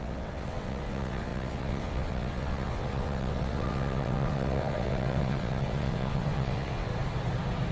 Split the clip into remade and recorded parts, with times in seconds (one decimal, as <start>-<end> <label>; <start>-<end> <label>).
0.0-6.9 remade; 6.9-7.7 recorded